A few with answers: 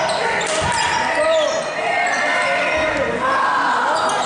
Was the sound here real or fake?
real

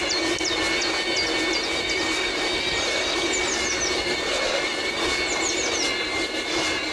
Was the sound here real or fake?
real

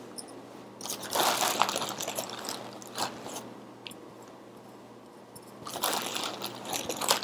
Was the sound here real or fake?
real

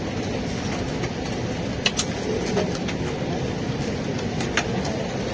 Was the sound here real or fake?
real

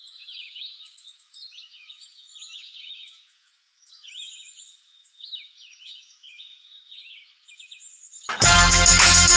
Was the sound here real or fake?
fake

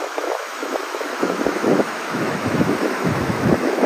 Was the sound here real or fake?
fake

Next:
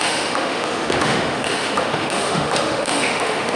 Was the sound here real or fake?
fake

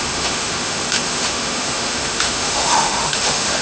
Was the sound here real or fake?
fake